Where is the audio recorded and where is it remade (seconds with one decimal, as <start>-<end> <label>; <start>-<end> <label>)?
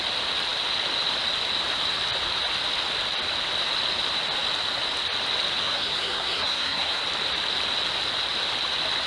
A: 0.0-5.6 recorded; 5.6-7.0 remade; 7.0-9.1 recorded